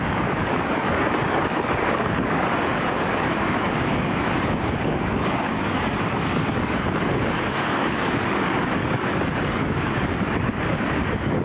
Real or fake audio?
fake